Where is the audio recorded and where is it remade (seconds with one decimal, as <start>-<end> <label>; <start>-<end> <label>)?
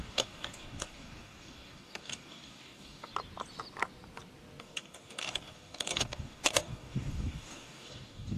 0.0-3.1 remade; 3.1-4.6 recorded; 4.6-8.4 remade